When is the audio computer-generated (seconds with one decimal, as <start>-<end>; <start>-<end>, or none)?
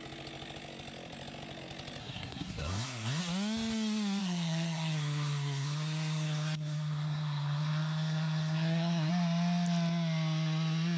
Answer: 2.0-3.2; 4.2-9.1